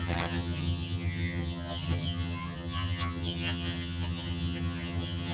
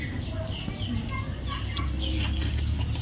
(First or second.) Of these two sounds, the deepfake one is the first